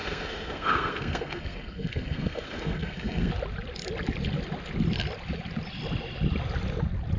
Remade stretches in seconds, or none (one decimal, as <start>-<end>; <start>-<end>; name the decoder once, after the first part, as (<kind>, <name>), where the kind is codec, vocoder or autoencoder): 0.0-3.3 (codec, SNAC)